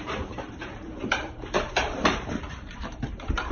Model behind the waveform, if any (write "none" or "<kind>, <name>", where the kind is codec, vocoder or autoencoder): vocoder, BigVGAN v2